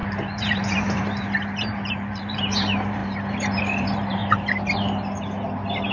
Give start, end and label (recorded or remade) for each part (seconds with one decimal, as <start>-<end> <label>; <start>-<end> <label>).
0.0-4.2 remade; 4.2-5.9 recorded